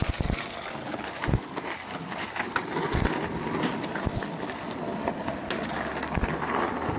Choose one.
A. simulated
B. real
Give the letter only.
B